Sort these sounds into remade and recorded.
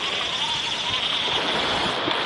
recorded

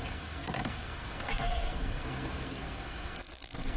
remade